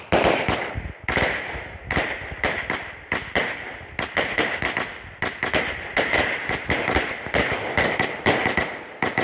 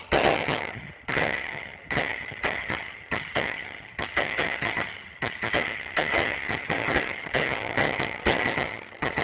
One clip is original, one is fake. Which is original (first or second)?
first